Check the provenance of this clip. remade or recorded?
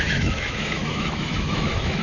remade